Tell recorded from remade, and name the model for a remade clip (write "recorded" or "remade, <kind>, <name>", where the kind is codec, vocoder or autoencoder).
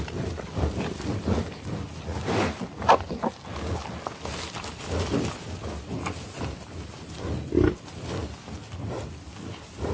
recorded